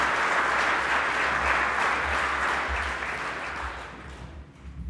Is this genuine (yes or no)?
yes